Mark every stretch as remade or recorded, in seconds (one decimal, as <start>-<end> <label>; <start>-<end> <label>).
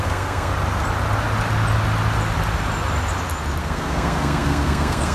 0.0-0.5 remade; 0.5-3.6 recorded; 3.6-5.1 remade